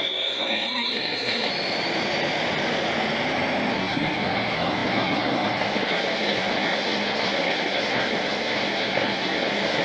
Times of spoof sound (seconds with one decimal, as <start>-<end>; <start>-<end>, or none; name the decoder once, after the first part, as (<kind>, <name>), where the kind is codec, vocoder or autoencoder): 0.0-1.5 (codec, SNAC); 3.7-9.8